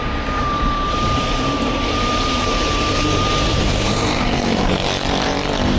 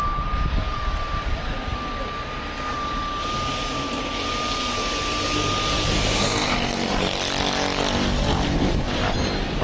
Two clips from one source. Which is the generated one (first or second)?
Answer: first